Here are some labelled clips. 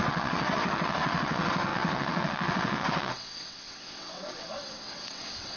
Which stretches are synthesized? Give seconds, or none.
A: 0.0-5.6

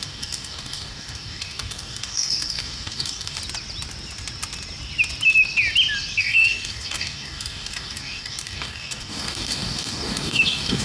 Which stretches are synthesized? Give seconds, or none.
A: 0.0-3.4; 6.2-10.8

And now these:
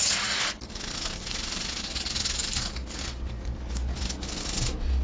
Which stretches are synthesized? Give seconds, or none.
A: none